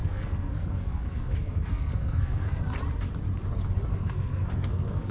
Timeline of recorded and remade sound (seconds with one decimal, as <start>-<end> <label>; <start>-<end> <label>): 0.0-2.6 remade; 2.6-3.9 recorded; 3.9-5.1 remade